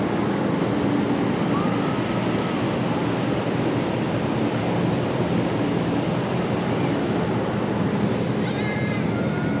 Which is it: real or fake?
real